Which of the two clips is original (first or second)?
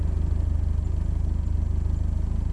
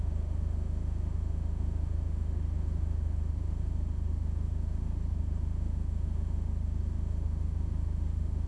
first